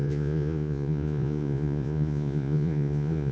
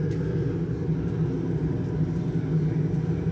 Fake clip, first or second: first